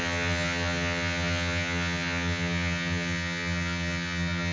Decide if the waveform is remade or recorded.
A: remade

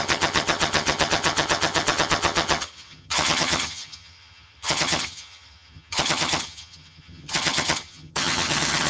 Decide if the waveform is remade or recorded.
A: remade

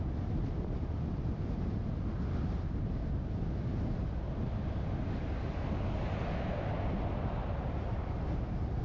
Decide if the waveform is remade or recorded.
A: recorded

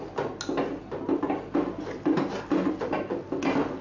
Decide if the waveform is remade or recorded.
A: recorded